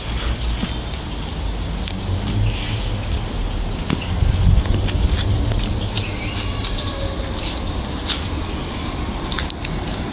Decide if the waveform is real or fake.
real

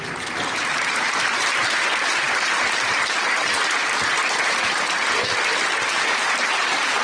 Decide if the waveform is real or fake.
fake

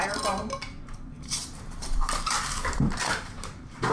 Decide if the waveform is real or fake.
fake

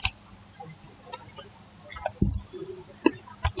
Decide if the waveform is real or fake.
real